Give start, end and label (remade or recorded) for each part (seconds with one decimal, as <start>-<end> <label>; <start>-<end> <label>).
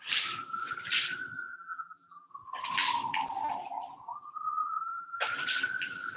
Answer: 0.0-1.5 recorded; 1.5-2.3 remade; 2.3-4.6 recorded; 4.6-5.2 remade; 5.2-6.2 recorded